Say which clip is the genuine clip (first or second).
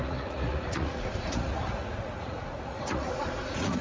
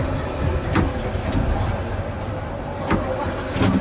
second